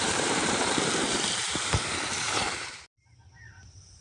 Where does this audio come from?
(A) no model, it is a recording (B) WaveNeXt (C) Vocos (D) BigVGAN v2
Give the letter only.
D